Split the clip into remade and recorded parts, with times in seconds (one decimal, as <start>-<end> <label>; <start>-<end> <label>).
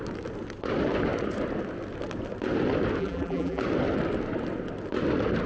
0.0-3.0 recorded; 3.0-3.6 remade; 3.6-5.5 recorded